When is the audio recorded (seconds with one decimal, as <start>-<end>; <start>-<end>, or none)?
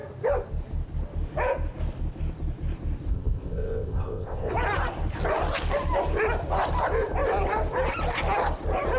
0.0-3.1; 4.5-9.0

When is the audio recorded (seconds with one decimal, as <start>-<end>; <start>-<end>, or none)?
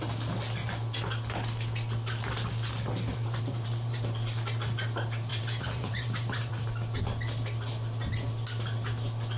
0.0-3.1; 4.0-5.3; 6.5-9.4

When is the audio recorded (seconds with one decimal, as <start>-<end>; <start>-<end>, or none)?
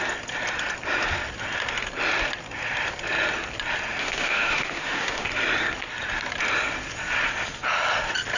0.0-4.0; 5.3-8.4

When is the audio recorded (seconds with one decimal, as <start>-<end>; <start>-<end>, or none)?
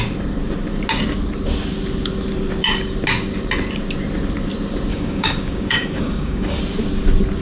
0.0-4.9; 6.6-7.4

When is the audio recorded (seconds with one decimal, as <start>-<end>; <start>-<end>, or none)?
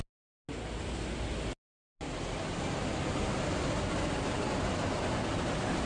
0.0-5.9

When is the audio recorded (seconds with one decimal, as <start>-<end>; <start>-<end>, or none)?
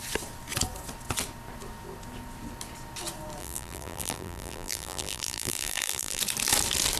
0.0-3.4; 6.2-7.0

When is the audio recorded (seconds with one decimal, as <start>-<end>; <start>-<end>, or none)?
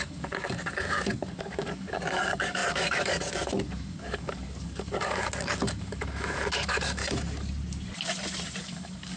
7.0-8.6